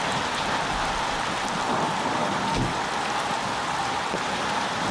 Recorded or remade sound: recorded